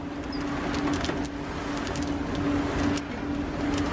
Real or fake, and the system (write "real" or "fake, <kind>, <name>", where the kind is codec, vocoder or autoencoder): real